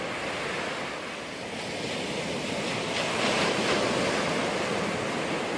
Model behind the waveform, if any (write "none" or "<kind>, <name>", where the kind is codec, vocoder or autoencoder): none